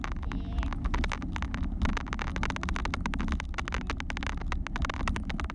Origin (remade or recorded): recorded